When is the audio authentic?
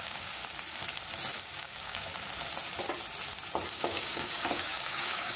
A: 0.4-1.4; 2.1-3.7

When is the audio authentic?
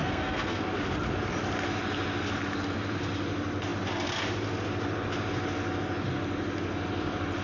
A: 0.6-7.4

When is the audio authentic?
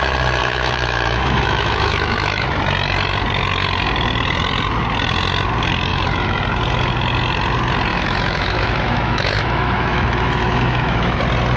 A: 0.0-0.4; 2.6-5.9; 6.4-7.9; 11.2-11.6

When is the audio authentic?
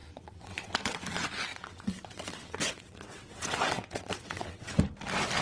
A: 1.0-1.5; 4.7-5.4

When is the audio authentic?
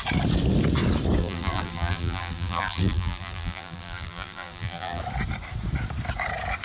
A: 0.0-1.2; 5.0-6.6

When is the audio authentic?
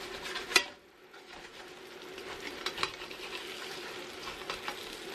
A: 0.0-5.1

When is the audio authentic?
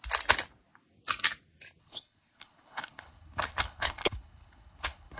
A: 0.0-1.8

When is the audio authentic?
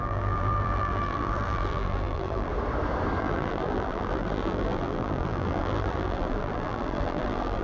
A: 2.5-3.2